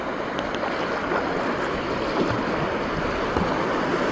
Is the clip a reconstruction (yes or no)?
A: no